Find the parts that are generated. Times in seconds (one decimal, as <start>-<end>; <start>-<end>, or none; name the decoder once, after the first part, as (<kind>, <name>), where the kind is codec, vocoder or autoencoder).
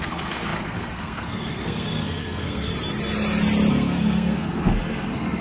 0.0-2.7 (codec, SNAC); 3.7-5.4